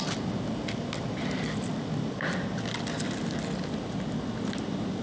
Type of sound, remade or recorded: recorded